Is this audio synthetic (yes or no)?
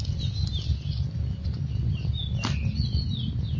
no